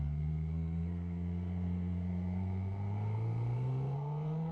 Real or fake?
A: fake